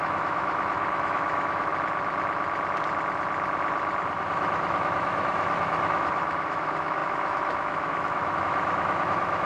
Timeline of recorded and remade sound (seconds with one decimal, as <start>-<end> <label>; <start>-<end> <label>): 0.0-1.7 remade; 1.7-4.2 recorded; 4.2-9.5 remade